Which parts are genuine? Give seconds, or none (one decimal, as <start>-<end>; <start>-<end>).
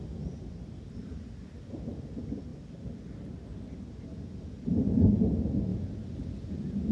0.0-6.9